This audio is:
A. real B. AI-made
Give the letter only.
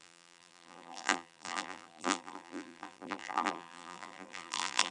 B